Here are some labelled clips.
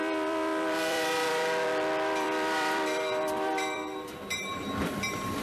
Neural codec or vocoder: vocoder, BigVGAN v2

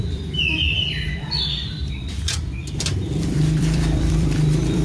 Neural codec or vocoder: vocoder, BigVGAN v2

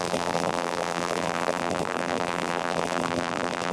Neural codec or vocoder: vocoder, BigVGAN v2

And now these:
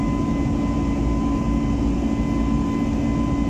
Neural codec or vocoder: none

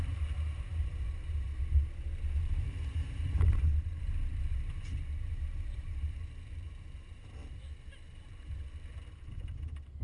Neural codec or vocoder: vocoder, BigVGAN v2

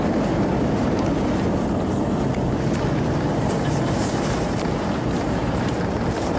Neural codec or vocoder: none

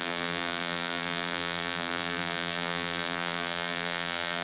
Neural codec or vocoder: vocoder, BigVGAN v2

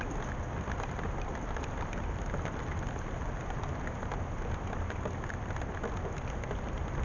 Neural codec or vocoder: none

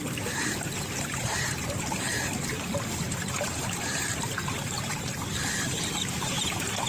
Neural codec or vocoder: vocoder, BigVGAN v2